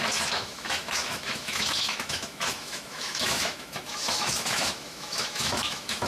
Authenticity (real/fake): fake